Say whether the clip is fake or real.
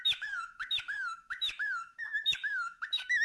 fake